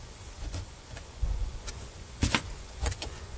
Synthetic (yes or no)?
yes